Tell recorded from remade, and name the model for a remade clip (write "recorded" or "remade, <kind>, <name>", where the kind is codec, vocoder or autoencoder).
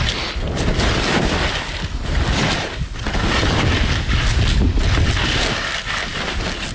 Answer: recorded